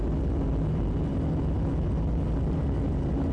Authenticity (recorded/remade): recorded